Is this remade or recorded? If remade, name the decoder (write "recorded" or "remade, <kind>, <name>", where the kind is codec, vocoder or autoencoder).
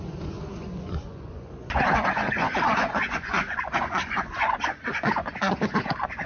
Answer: remade, vocoder, Vocos